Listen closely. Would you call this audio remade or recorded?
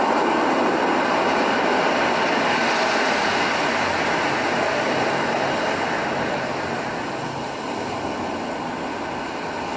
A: recorded